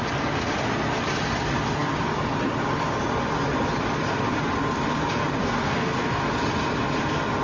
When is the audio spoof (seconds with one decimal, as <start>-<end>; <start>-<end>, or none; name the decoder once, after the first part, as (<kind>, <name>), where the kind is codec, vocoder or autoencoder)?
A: 5.4-6.2 (codec, SNAC)